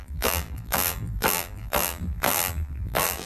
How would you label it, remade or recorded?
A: remade